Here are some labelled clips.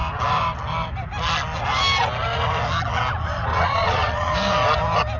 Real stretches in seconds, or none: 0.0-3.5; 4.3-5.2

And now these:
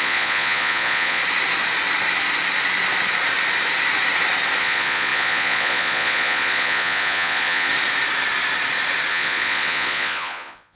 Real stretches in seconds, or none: 1.2-4.6; 7.7-9.1

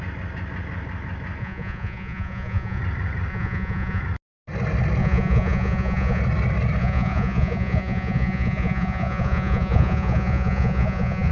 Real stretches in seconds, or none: 0.0-1.4; 2.8-3.3; 4.0-5.0; 6.2-6.8

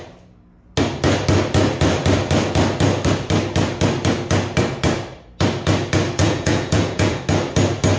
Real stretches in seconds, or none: 0.0-6.2; 7.2-8.0